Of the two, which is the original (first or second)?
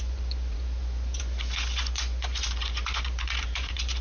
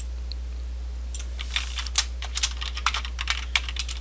second